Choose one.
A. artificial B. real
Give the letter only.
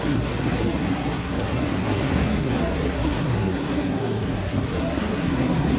A